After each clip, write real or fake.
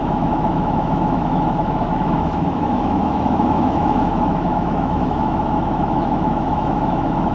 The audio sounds fake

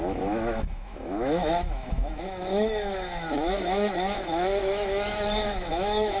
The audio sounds fake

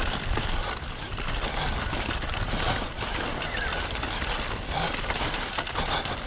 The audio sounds real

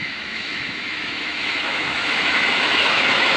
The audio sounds fake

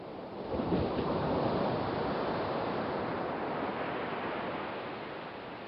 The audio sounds real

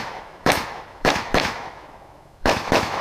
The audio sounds fake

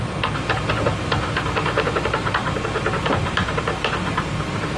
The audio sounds real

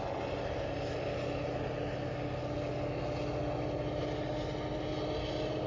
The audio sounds real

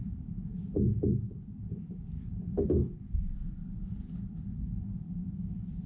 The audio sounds real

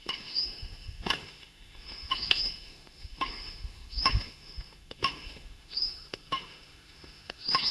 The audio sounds fake